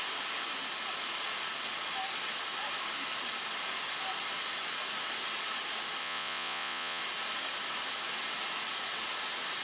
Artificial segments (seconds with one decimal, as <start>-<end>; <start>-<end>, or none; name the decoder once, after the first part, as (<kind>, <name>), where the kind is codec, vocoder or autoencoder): 6.0-7.0 (vocoder, Vocos)